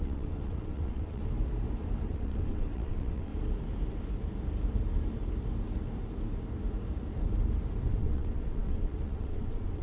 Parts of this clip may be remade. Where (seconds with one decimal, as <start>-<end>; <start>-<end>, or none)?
0.0-1.2; 2.1-3.3; 7.9-9.8